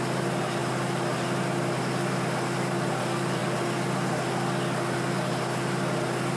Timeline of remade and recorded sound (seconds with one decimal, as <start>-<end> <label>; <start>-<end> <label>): 0.0-6.4 recorded